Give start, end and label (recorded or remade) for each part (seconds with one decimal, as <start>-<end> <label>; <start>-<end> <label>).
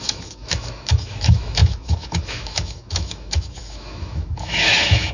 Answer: 0.0-5.1 remade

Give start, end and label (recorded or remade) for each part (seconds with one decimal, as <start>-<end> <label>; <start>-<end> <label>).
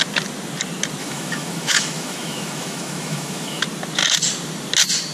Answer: 0.0-1.0 recorded; 1.0-3.6 remade; 3.6-5.1 recorded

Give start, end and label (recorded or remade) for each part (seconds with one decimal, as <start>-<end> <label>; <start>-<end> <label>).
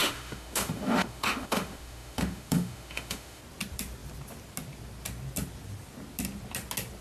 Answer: 0.0-3.4 remade; 3.4-7.0 recorded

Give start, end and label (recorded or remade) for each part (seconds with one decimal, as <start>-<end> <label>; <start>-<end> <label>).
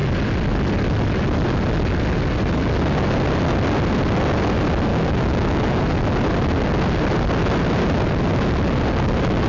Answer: 0.0-4.9 recorded; 4.9-5.8 remade; 5.8-9.5 recorded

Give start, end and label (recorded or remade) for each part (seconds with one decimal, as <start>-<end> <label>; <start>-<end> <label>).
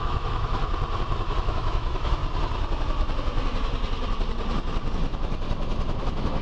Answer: 0.0-0.6 remade; 0.6-1.4 recorded; 1.4-2.2 remade; 2.2-6.0 recorded; 6.0-6.4 remade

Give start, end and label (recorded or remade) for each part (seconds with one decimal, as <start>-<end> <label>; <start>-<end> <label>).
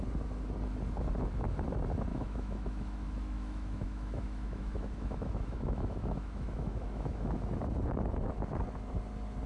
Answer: 0.0-2.1 recorded; 2.1-7.3 remade; 7.3-9.5 recorded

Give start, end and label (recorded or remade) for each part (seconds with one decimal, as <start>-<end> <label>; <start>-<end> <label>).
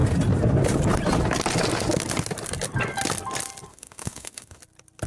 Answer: 0.0-3.7 recorded; 3.7-4.6 remade; 4.6-5.1 recorded